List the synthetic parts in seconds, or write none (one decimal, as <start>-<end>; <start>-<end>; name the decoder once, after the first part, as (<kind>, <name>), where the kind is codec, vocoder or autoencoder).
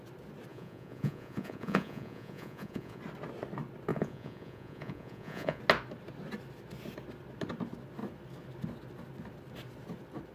0.5-3.0 (vocoder, Vocos); 3.9-5.6